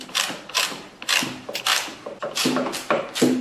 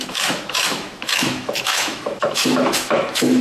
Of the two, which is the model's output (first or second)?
second